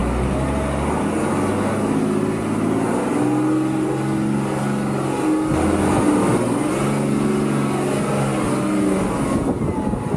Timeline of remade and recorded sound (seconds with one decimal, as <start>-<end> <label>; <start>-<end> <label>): 0.0-10.2 recorded